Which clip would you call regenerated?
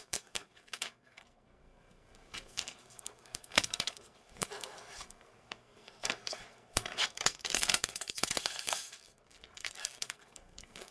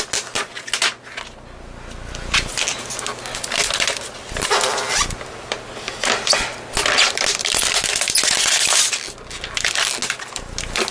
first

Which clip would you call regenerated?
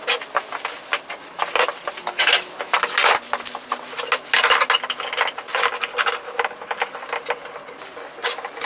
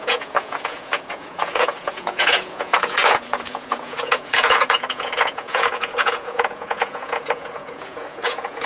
second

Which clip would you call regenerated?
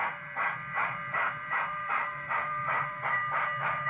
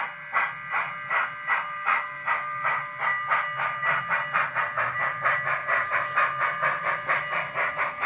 first